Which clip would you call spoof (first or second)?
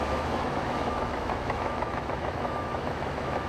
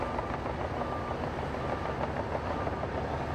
first